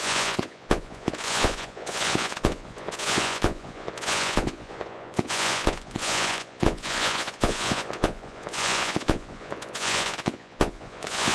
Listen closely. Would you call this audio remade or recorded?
remade